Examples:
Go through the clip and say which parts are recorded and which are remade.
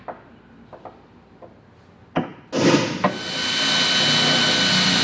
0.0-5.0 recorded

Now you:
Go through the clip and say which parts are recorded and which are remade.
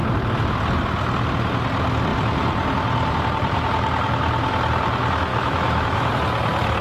0.0-5.3 recorded; 5.3-6.1 remade; 6.1-6.8 recorded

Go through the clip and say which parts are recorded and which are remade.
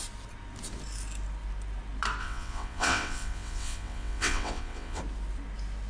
0.0-2.2 recorded; 2.2-5.0 remade; 5.0-5.9 recorded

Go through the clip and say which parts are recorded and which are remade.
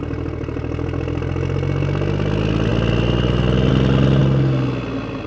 0.0-5.3 recorded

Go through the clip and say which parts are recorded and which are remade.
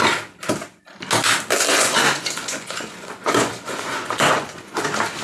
0.0-1.7 recorded; 1.7-4.8 remade; 4.8-5.2 recorded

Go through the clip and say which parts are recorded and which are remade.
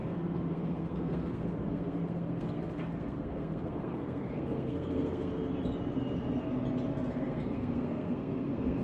0.0-5.3 remade; 5.3-7.1 recorded; 7.1-8.8 remade